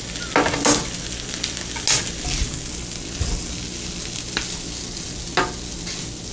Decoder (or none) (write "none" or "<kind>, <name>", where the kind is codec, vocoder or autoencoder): none